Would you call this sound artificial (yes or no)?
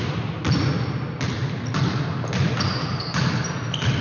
no